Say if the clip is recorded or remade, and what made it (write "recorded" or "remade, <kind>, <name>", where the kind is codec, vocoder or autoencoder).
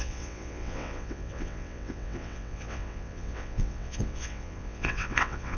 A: remade, vocoder, WaveNeXt